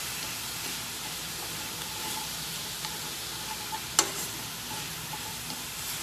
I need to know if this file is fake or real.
real